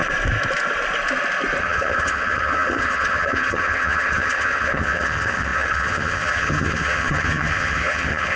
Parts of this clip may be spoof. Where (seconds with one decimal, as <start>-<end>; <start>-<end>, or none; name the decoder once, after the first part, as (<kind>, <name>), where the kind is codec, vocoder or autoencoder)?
1.6-8.4 (vocoder, HiFi-GAN)